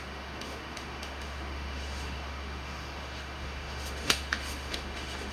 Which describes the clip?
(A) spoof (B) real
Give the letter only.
A